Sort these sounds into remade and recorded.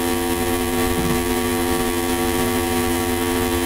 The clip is remade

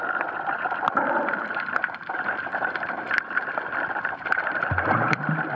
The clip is remade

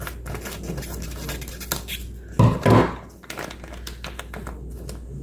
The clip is recorded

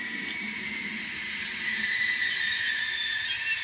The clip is remade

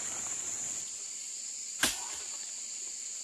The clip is recorded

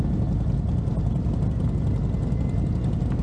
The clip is recorded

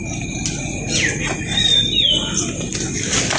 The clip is recorded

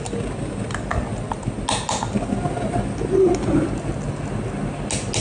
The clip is recorded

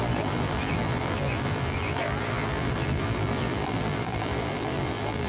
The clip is remade